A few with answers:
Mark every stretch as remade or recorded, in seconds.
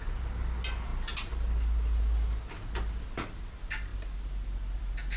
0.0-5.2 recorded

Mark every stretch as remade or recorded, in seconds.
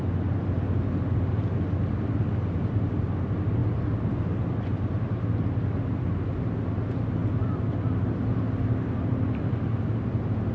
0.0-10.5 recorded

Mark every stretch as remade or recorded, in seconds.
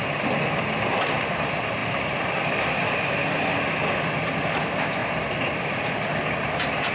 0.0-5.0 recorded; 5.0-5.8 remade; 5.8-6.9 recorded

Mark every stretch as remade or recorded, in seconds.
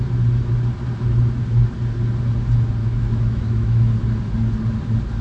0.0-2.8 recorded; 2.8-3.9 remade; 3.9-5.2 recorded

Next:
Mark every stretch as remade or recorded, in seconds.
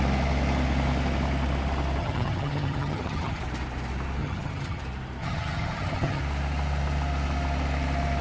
0.0-2.0 recorded; 2.0-3.4 remade; 3.4-4.2 recorded; 4.2-4.8 remade; 4.8-5.2 recorded; 5.2-6.2 remade; 6.2-8.2 recorded